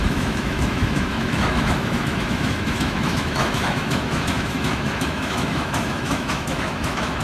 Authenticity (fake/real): fake